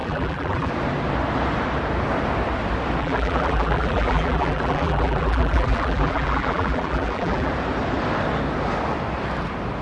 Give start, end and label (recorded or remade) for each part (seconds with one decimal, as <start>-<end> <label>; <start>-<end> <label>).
0.0-0.7 remade; 0.7-3.0 recorded; 3.0-7.5 remade; 7.5-9.8 recorded